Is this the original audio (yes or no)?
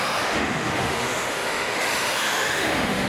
no